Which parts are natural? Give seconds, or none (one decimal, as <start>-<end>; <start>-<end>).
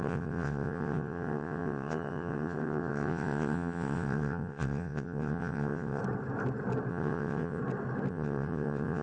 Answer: 6.0-6.9; 7.6-8.1